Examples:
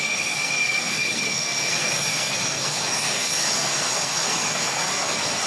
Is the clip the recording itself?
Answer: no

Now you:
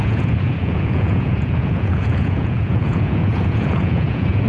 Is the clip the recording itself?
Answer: no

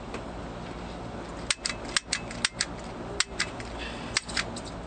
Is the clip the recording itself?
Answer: yes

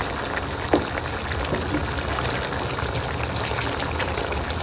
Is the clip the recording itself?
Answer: yes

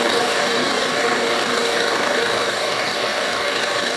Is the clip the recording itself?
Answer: no